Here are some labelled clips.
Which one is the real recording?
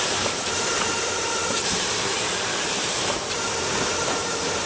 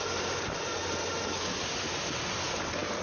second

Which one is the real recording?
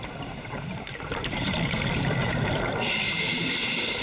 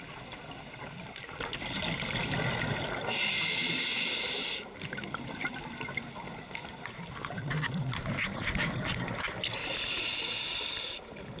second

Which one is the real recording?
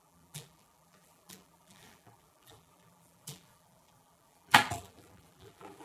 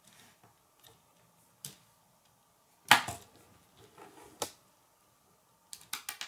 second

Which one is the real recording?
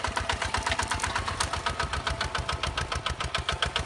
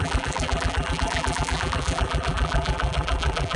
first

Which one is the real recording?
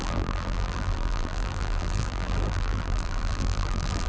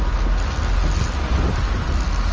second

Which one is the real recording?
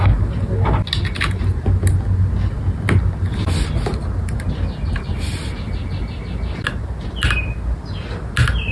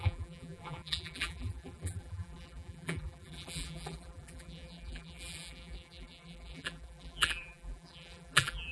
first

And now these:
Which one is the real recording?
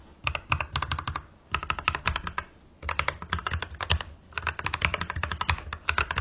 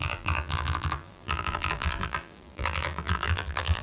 first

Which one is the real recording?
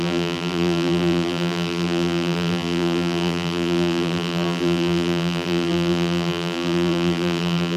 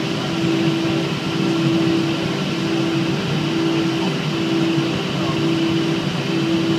second